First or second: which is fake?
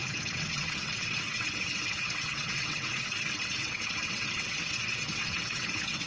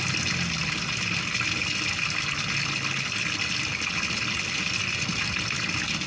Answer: first